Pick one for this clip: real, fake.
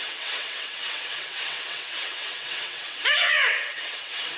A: fake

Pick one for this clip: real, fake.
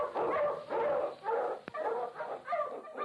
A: real